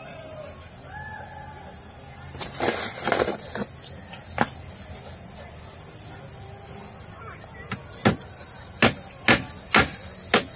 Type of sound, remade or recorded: recorded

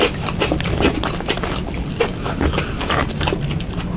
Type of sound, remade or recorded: recorded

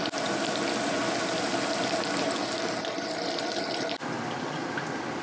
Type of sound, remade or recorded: recorded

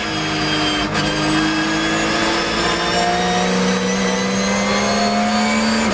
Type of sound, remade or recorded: recorded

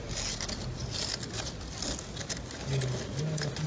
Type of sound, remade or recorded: recorded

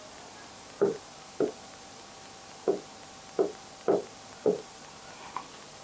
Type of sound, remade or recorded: recorded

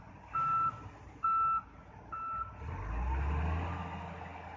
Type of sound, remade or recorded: recorded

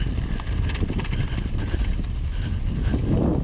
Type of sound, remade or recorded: recorded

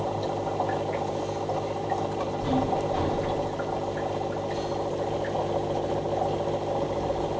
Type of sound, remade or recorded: recorded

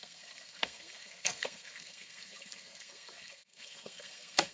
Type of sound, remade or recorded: remade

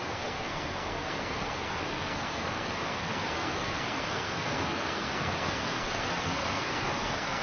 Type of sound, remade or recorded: remade